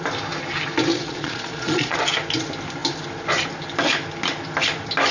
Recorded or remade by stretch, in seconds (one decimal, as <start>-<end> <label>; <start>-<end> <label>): 0.0-0.9 recorded; 0.9-2.0 remade; 2.0-5.1 recorded